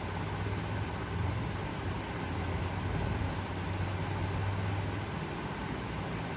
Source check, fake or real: real